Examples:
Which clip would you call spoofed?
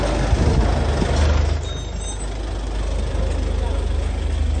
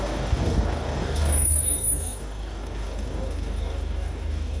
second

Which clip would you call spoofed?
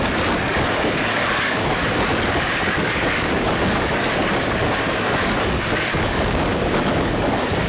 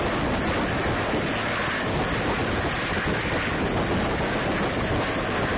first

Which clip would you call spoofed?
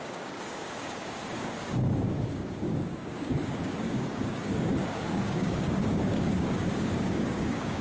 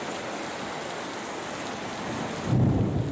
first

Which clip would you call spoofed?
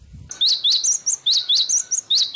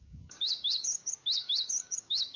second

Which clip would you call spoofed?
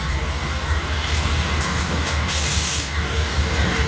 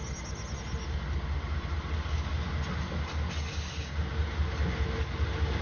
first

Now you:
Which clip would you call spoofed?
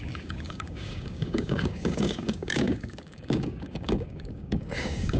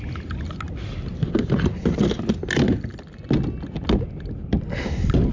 first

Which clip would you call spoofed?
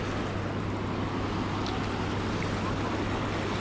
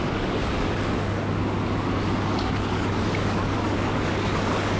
second